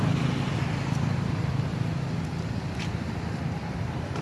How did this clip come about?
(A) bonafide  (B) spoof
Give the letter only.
A